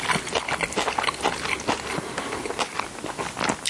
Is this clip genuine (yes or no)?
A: yes